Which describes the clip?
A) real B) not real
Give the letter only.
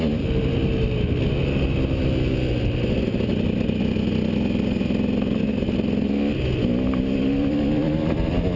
A